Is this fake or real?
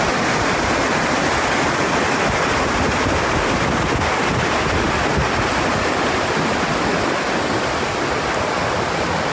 real